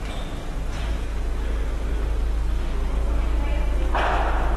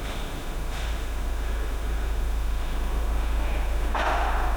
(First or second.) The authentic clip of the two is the first